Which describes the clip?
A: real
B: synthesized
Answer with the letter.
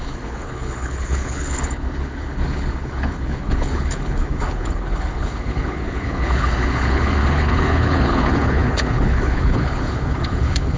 B